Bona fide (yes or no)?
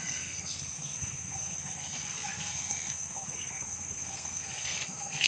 no